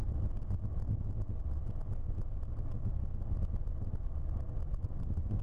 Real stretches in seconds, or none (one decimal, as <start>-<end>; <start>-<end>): 0.0-5.4